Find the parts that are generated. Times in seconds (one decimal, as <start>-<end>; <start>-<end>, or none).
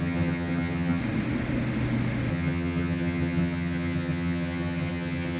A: 0.0-1.0; 2.3-5.4